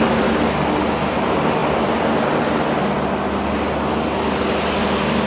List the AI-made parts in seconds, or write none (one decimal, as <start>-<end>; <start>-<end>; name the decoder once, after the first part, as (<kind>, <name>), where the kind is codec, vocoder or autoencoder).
none